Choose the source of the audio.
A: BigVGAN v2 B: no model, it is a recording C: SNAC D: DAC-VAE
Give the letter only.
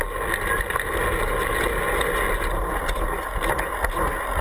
B